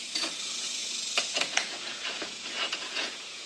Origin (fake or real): fake